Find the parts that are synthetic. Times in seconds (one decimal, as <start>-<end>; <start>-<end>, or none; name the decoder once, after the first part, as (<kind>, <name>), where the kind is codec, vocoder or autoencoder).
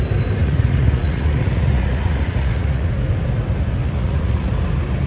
0.4-2.9 (vocoder, Vocos); 3.8-4.5